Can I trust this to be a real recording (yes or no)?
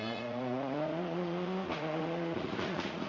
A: no